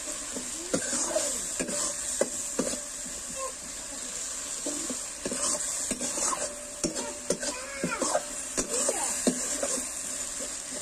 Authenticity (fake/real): real